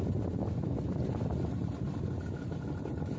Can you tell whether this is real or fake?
real